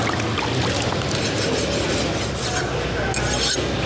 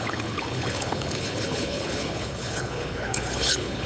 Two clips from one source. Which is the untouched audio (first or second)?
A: first